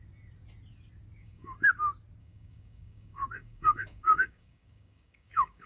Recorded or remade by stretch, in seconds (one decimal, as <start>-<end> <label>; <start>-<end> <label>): 0.0-1.2 recorded; 1.2-1.7 remade; 1.7-2.2 recorded; 2.2-5.7 remade